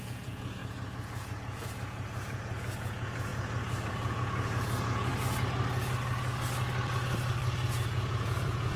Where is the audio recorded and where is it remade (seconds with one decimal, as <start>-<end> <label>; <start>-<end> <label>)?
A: 0.0-5.1 remade; 5.1-7.7 recorded; 7.7-8.8 remade